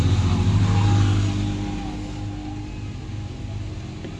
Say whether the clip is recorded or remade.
recorded